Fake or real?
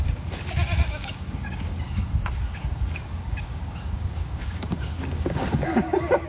fake